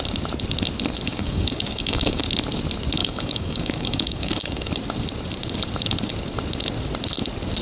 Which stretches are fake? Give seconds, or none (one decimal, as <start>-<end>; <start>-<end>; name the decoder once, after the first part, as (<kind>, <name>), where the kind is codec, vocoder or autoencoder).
1.1-2.2 (codec, DAC); 3.0-4.7